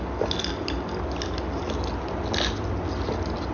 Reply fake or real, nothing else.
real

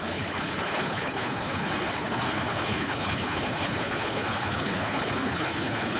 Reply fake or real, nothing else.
fake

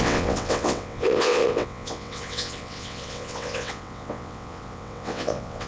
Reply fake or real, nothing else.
fake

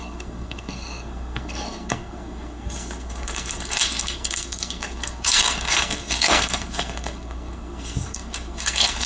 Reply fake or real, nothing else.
fake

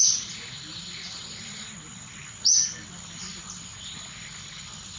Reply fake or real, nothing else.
real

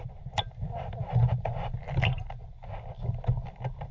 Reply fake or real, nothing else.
real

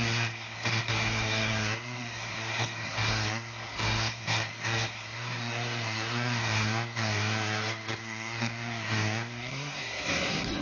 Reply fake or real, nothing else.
fake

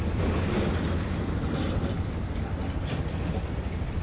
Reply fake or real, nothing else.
real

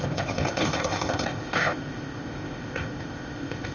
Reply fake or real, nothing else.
fake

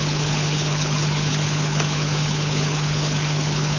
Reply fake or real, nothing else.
fake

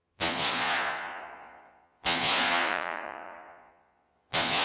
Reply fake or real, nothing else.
fake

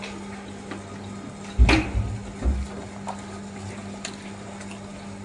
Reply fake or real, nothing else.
real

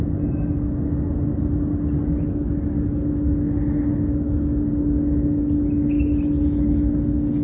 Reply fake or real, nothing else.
real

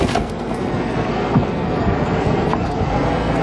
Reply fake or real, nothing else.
fake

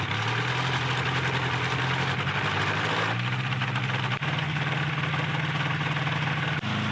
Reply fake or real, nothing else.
real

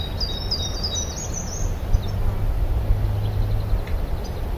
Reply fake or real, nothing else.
real